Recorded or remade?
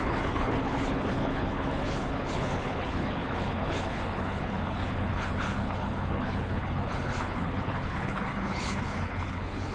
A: remade